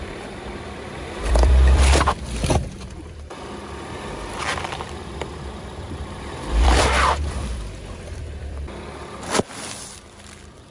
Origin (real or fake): fake